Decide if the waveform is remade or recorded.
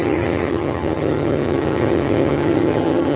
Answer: remade